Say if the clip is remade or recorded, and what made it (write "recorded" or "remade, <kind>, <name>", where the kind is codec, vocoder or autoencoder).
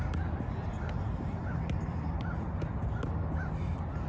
recorded